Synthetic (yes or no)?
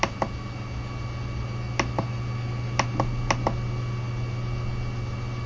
no